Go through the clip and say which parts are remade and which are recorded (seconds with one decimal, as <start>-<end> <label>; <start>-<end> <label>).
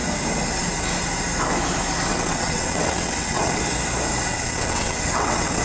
0.0-2.1 recorded; 2.1-3.6 remade; 3.6-4.3 recorded; 4.3-5.6 remade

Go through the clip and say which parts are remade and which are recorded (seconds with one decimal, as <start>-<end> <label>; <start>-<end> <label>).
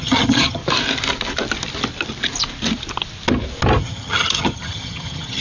0.0-0.6 remade; 0.6-3.8 recorded; 3.8-5.4 remade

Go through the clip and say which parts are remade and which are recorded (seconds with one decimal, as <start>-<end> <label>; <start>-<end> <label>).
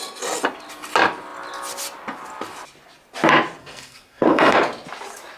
0.0-3.6 recorded; 3.6-4.6 remade; 4.6-5.4 recorded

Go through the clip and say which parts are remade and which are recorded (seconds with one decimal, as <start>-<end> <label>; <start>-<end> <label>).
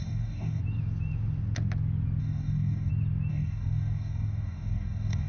0.0-0.6 remade; 0.6-2.2 recorded; 2.2-2.9 remade; 2.9-3.3 recorded; 3.3-5.3 remade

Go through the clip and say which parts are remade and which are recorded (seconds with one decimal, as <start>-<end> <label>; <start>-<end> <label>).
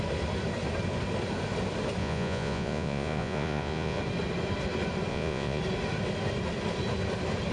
0.0-2.0 recorded; 2.0-4.0 remade; 4.0-5.1 recorded; 5.1-5.6 remade; 5.6-7.5 recorded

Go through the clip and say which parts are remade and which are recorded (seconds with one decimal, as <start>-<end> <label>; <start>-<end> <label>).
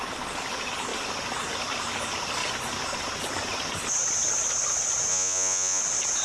0.0-5.1 recorded; 5.1-5.8 remade; 5.8-6.2 recorded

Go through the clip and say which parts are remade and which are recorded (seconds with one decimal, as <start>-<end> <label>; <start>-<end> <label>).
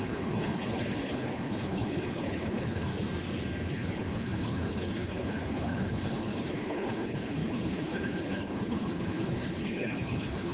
0.0-2.9 remade; 2.9-3.7 recorded; 3.7-10.5 remade